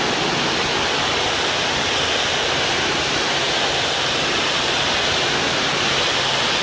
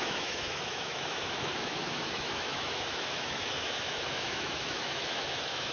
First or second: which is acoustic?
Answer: first